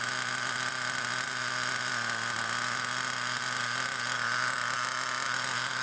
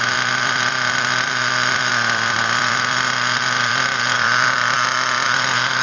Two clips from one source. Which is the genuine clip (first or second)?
first